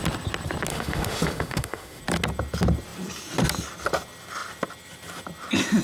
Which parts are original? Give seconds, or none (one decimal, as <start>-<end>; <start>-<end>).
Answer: 0.0-0.7; 2.0-5.8